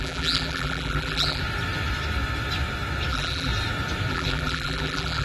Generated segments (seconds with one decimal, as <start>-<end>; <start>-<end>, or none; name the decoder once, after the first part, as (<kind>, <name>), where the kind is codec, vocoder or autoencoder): 0.0-1.4 (vocoder, BigVGAN v2); 3.1-3.5; 4.1-5.2

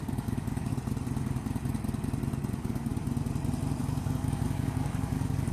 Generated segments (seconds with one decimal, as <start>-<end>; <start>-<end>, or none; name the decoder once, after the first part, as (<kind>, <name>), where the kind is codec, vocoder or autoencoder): 0.0-0.7 (codec, DAC); 2.5-2.9; 3.8-5.5

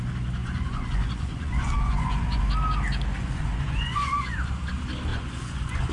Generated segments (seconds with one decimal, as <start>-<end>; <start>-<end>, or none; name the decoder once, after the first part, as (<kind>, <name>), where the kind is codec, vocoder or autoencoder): 0.4-2.4 (vocoder, Vocos); 3.2-4.4; 5.1-5.9

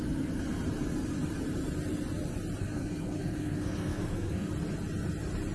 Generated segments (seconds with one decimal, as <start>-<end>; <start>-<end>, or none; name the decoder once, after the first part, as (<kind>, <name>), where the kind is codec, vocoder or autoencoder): 2.6-4.5 (codec, SNAC)

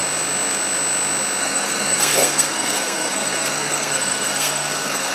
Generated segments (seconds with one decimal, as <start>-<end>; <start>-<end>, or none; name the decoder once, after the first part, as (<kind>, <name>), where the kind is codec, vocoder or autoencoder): 1.4-5.1 (codec, SNAC)

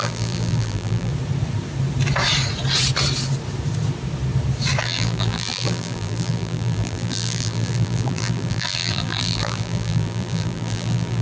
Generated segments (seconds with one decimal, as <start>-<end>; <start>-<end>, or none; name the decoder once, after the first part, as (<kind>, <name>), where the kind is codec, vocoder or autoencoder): 0.0-1.1 (vocoder, BigVGAN v2); 4.8-11.2